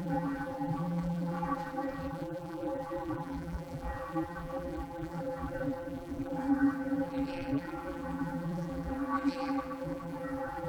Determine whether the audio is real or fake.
fake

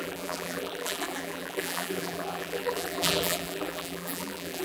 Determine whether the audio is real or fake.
fake